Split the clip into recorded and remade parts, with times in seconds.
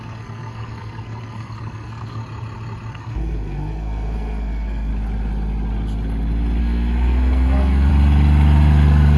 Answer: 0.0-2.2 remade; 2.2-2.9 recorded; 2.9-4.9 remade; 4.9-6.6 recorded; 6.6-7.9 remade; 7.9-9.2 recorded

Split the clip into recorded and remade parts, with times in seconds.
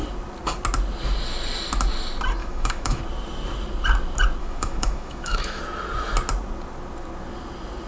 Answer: 0.0-2.4 recorded; 2.4-3.0 remade; 3.0-4.4 recorded; 4.4-5.6 remade; 5.6-7.9 recorded